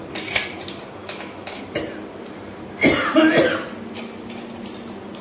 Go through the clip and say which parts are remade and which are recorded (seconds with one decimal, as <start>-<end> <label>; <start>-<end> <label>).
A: 0.0-1.0 recorded; 1.0-1.6 remade; 1.6-5.2 recorded